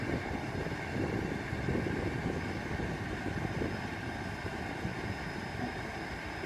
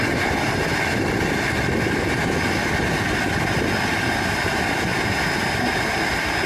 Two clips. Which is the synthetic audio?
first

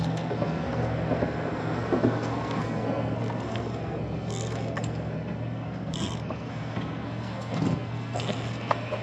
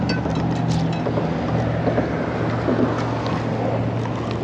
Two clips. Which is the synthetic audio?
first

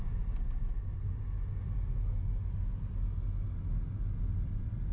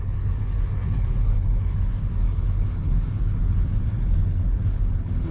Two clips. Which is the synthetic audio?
second